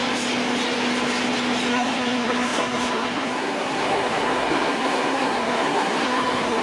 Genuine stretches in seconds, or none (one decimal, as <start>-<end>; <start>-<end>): 0.0-1.7